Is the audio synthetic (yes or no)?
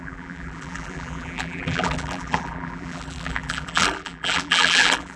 yes